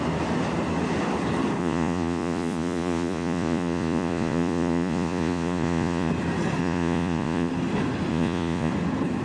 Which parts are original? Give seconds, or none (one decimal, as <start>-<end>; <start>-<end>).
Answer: 0.0-1.6; 6.1-6.6; 7.5-8.1; 8.7-9.2